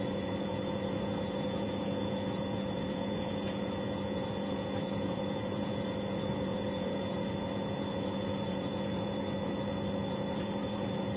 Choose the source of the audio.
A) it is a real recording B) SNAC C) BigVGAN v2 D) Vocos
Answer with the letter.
D